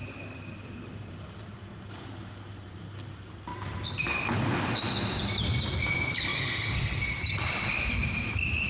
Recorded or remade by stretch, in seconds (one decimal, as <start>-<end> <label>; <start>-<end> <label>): 0.0-3.5 remade; 3.5-5.2 recorded; 5.2-6.3 remade; 6.3-7.4 recorded; 7.4-8.7 remade